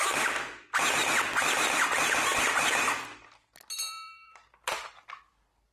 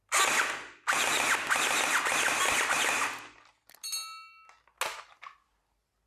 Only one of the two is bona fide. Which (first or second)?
second